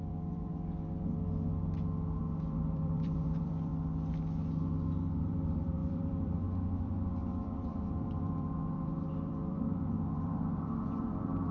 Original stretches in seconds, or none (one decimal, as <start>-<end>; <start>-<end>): 0.5-2.2; 3.7-5.2